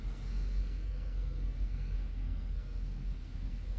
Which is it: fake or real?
fake